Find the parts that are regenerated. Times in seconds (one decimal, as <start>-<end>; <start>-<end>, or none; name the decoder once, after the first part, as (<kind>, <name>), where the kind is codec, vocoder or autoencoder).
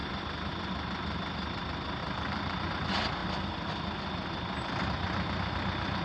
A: 2.0-2.7 (vocoder, BigVGAN v2)